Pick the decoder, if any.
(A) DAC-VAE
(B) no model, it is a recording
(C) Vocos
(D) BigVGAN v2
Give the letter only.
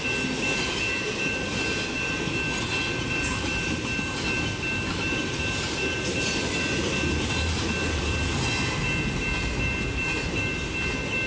B